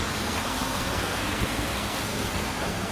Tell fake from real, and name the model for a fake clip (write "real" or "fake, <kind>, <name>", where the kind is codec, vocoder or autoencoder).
fake, codec, SNAC